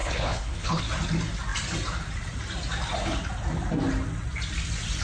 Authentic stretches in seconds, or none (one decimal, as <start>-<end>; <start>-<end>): 0.8-5.0